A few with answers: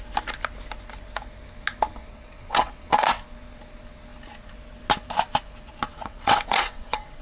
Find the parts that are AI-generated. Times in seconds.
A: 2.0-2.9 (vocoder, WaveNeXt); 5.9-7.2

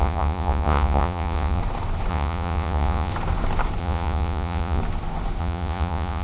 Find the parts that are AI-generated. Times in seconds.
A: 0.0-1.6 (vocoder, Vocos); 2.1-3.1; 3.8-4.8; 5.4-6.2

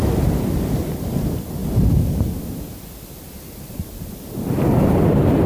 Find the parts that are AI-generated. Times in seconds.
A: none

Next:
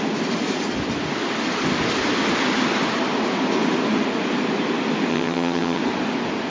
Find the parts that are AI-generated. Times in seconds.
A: 5.1-5.8 (vocoder, HiFi-GAN)